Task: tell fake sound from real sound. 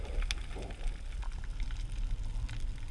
real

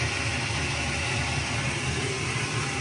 real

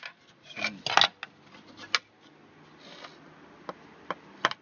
real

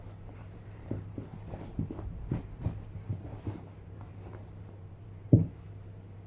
fake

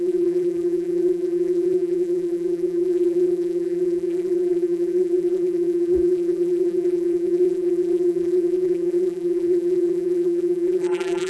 fake